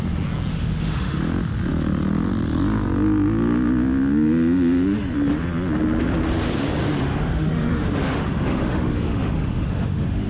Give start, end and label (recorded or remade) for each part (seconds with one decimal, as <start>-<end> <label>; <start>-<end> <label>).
0.0-0.5 recorded; 0.5-1.2 remade; 1.2-7.0 recorded; 7.0-10.3 remade